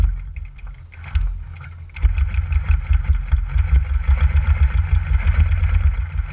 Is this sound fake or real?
real